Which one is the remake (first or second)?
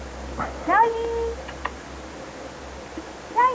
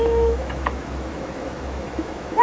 second